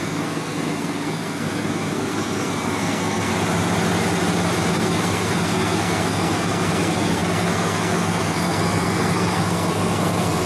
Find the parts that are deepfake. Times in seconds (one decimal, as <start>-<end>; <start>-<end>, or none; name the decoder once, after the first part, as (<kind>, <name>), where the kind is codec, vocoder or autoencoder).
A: 0.0-3.3 (codec, SNAC); 4.7-10.5